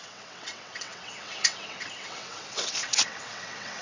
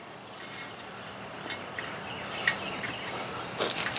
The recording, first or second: second